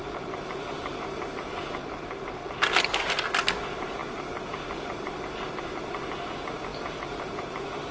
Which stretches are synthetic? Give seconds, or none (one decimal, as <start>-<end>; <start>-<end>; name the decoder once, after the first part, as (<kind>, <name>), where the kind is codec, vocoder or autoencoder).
0.0-2.4 (vocoder, BigVGAN v2); 3.5-7.9